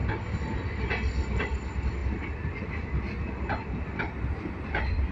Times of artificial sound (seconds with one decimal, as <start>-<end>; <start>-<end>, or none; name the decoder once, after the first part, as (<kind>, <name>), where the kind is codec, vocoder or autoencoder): 1.4-2.0 (vocoder, BigVGAN v2); 4.5-5.1